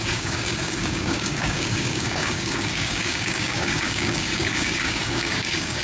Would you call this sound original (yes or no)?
no